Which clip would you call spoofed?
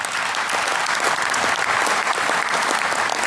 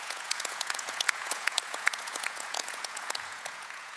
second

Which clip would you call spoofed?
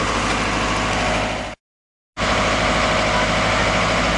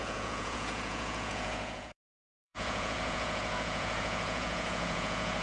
second